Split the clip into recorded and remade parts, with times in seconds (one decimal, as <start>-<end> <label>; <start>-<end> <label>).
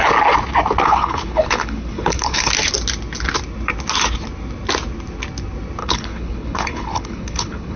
0.0-0.8 recorded; 0.8-2.5 remade; 2.5-5.8 recorded; 5.8-7.8 remade